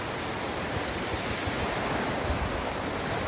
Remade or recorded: recorded